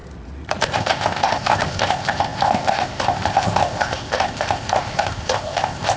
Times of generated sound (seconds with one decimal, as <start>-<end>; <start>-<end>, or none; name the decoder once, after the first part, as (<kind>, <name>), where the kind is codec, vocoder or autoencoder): 0.6-6.0 (codec, ZipCodec)